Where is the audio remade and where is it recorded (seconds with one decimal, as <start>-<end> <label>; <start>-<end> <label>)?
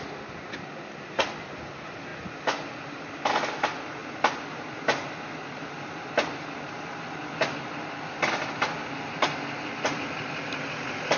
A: 0.0-11.2 recorded